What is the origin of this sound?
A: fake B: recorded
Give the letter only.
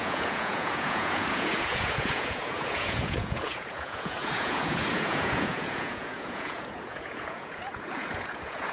A